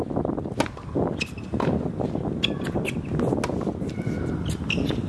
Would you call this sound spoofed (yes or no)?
no